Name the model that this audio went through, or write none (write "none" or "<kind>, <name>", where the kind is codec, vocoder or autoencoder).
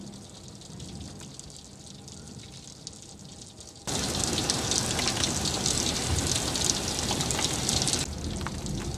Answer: none